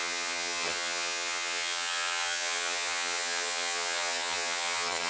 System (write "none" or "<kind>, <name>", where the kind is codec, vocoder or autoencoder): vocoder, HiFi-GAN